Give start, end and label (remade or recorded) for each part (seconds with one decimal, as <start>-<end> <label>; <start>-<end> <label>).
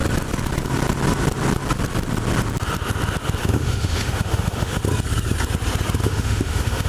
0.0-3.4 recorded; 3.4-4.8 remade; 4.8-6.0 recorded; 6.0-6.9 remade